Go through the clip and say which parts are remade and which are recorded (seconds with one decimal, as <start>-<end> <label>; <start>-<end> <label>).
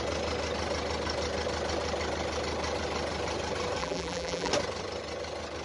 0.0-3.8 recorded; 3.8-4.5 remade; 4.5-5.6 recorded